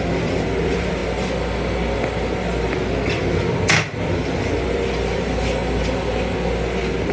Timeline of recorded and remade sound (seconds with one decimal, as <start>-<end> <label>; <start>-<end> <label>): 0.0-1.0 remade; 1.0-4.1 recorded; 4.1-5.6 remade; 5.6-7.1 recorded